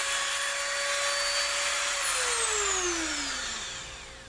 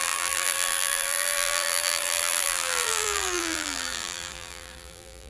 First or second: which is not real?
second